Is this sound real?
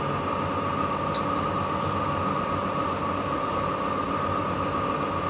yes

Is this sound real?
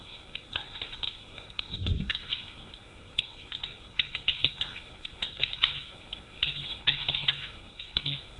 no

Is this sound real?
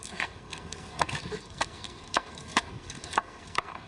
no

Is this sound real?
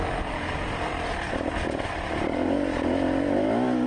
yes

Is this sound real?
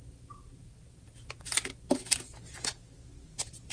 yes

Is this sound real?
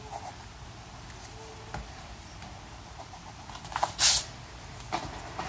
yes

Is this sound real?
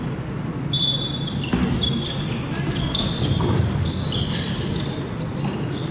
yes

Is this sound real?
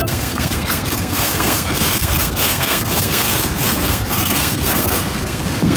no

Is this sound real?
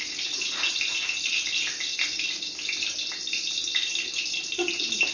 yes